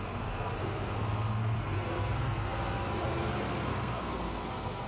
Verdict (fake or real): fake